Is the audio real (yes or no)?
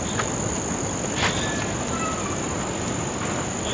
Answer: yes